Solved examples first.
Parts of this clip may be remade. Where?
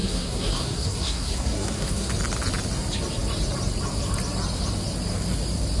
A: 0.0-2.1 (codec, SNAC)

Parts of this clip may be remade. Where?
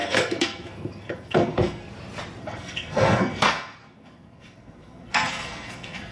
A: 0.0-1.9 (codec, SNAC); 2.4-6.1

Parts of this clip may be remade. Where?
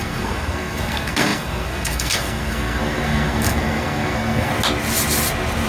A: 0.0-4.5 (codec, SNAC)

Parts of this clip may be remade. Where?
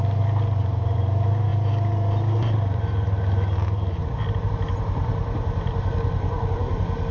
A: none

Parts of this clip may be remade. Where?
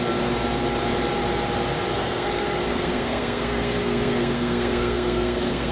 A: 2.0-5.7 (codec, SNAC)